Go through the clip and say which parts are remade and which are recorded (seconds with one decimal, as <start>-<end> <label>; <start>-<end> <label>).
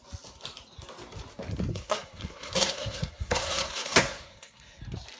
0.0-1.7 recorded; 1.7-4.8 remade; 4.8-5.2 recorded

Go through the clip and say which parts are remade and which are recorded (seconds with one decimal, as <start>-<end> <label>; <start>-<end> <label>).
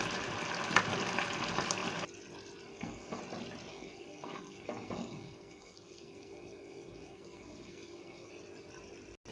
0.0-2.7 recorded; 2.7-3.2 remade; 3.2-3.7 recorded; 3.7-8.3 remade; 8.3-9.3 recorded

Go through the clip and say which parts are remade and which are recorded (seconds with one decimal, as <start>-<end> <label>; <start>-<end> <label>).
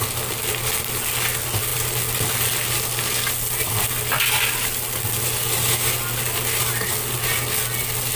0.0-8.2 recorded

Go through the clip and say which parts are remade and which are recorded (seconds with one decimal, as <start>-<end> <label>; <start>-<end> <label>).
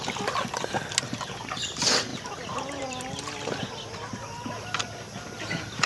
0.0-5.9 recorded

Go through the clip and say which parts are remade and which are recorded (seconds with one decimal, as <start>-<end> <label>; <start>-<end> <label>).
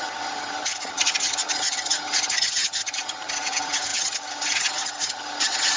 0.0-5.8 remade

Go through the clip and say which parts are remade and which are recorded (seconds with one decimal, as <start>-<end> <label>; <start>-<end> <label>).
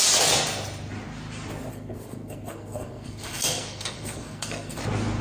0.0-1.7 recorded; 1.7-4.8 remade; 4.8-5.2 recorded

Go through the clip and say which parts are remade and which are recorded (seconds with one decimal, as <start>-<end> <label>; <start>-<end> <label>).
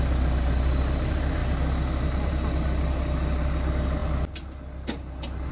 0.0-5.5 recorded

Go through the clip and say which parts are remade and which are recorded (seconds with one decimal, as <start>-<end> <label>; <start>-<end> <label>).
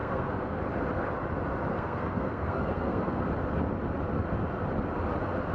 0.0-0.6 remade; 0.6-1.7 recorded; 1.7-3.2 remade; 3.2-5.5 recorded